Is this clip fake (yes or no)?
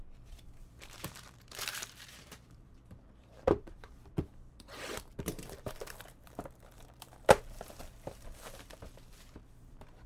yes